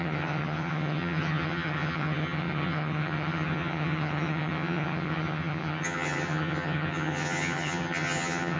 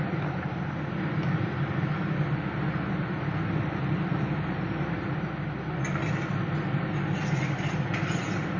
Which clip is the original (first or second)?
second